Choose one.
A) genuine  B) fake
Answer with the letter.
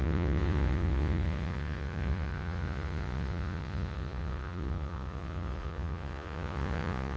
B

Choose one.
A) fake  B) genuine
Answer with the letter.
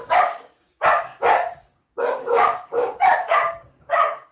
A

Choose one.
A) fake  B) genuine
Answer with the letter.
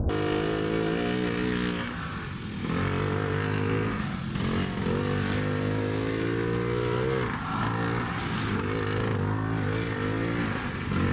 B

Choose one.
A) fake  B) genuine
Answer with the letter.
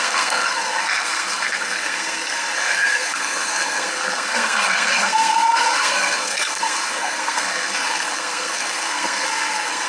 A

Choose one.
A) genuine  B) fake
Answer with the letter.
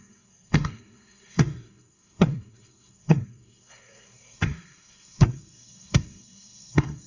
B